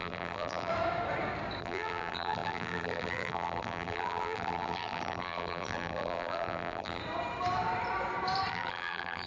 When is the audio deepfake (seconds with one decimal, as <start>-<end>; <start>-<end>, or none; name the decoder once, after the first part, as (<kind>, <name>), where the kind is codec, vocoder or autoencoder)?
0.0-0.7 (vocoder, BigVGAN v2); 1.6-7.0; 8.5-9.3